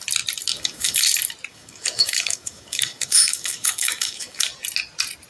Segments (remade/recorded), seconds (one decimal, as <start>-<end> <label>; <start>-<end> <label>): 0.0-0.5 recorded; 0.5-1.0 remade; 1.0-1.5 recorded; 1.5-4.4 remade; 4.4-5.3 recorded